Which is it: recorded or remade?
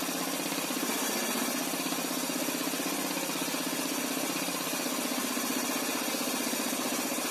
recorded